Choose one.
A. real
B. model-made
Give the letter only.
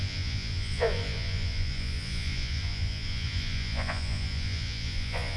B